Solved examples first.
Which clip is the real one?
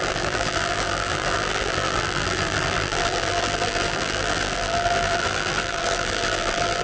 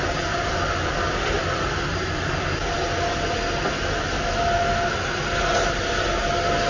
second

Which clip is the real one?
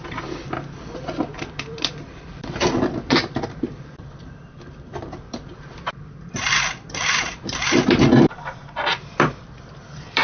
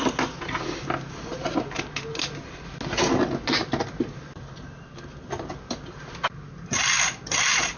second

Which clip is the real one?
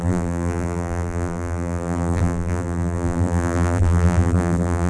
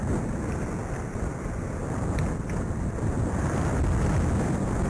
second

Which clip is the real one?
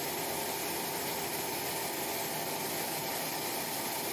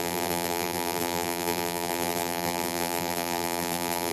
first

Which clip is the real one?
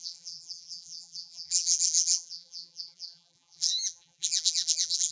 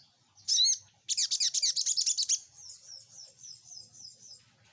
second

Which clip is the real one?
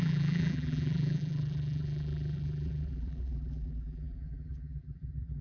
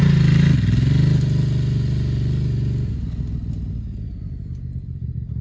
second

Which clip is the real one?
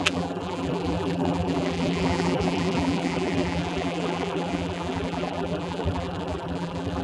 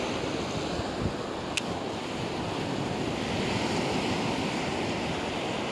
second